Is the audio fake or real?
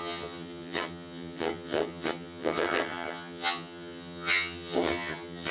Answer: fake